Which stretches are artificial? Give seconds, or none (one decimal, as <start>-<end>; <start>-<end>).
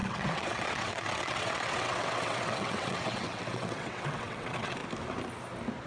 0.0-4.8